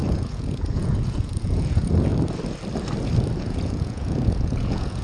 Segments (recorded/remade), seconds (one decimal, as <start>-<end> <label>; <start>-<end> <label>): 0.0-2.1 remade; 2.1-3.4 recorded; 3.4-5.0 remade